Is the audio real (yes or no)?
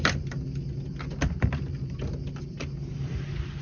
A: yes